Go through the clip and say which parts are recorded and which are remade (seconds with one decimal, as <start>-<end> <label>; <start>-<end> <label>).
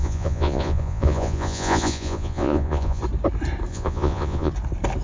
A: 0.0-3.0 remade; 3.0-3.7 recorded; 3.7-4.5 remade; 4.5-5.0 recorded